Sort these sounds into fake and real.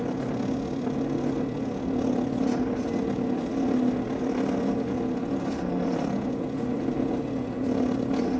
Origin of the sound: real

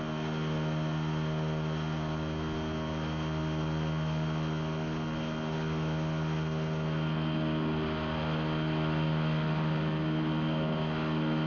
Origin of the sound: real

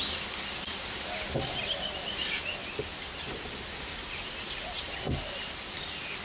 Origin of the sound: real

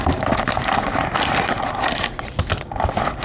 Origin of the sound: real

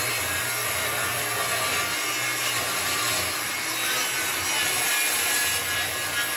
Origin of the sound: real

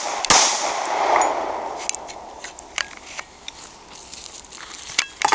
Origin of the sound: real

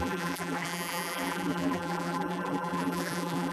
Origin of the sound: fake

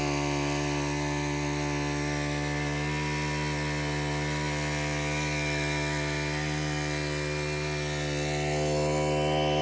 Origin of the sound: real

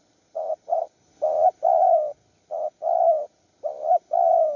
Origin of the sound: real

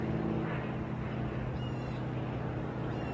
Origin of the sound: real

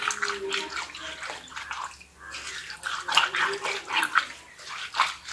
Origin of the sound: real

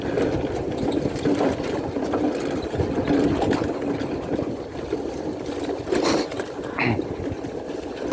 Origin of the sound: real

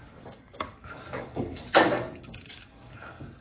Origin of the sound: fake